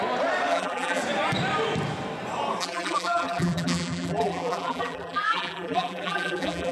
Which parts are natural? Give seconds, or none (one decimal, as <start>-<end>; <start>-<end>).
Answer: 0.0-0.5; 1.0-2.6